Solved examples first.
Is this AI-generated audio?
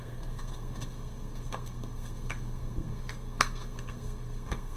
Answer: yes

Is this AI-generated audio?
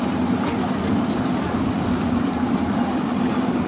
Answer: no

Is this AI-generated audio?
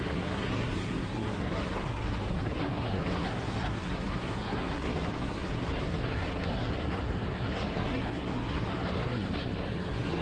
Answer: yes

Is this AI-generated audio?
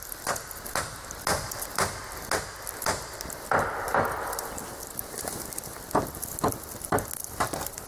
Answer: no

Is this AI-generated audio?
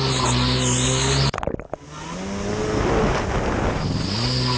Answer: no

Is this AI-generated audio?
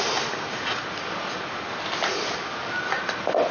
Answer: no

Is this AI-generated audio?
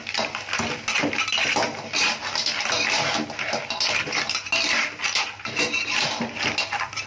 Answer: no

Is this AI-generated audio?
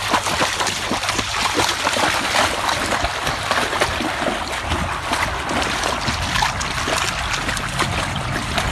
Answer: no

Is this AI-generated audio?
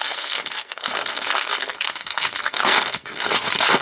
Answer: yes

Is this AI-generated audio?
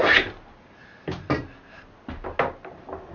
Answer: no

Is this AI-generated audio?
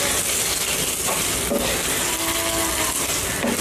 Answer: no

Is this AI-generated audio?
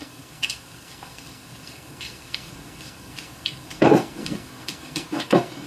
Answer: yes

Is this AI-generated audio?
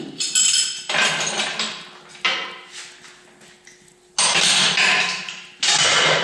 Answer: no